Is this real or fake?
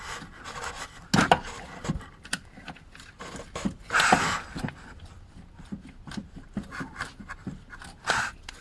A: real